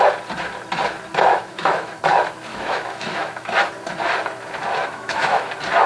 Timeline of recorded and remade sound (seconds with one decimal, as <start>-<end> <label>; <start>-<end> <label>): 0.0-1.3 recorded; 1.3-2.0 remade; 2.0-2.5 recorded; 2.5-3.7 remade; 3.7-4.8 recorded; 4.8-5.5 remade; 5.5-5.9 recorded